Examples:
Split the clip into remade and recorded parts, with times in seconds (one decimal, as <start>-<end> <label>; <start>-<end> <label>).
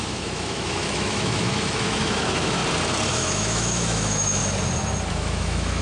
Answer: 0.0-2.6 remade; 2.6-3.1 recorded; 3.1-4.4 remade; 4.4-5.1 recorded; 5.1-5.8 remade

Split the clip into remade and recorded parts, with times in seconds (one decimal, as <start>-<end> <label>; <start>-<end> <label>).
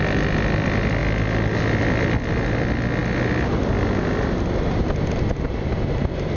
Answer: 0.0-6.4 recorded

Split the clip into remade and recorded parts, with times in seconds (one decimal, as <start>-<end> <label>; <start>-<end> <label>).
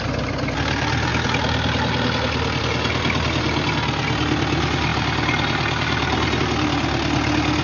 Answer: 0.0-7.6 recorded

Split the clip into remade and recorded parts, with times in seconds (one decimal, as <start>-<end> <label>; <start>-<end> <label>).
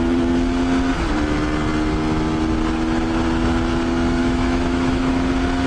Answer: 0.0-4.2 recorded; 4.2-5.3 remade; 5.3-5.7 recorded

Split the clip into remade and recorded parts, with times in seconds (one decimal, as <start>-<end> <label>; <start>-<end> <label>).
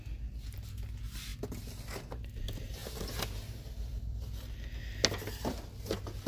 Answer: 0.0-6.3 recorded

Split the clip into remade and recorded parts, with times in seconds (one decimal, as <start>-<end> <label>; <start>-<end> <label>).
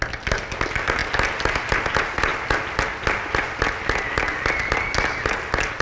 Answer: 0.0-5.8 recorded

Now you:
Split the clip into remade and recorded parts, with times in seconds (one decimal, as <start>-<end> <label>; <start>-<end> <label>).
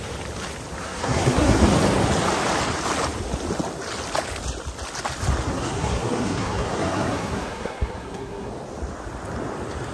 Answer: 0.0-0.8 recorded; 0.8-1.6 remade; 1.6-5.5 recorded; 5.5-8.5 remade; 8.5-9.9 recorded